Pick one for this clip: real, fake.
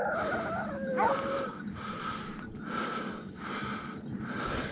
real